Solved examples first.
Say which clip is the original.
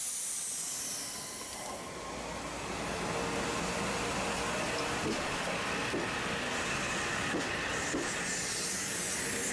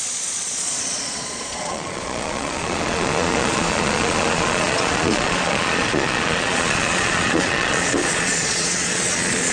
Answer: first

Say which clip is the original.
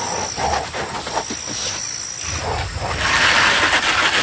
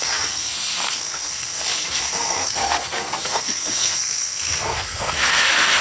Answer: first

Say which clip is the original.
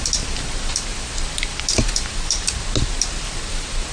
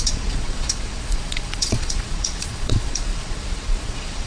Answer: first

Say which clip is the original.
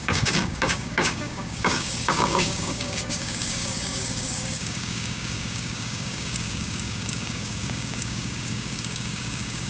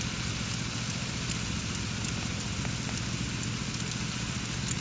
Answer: second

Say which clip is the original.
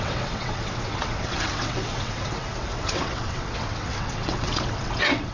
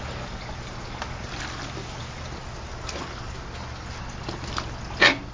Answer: second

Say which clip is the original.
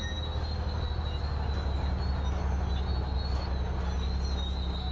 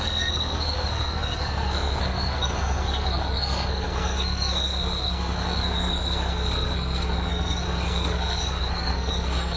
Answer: first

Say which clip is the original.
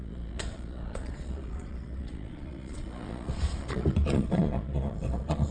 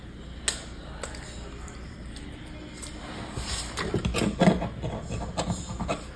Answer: second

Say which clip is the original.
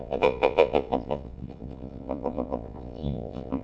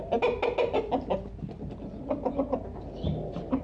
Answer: second